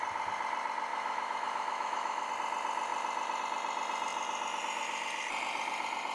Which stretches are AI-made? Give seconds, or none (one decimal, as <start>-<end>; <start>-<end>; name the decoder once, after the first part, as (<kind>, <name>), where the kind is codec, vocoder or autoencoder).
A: 0.9-2.3 (autoencoder, DAC-VAE)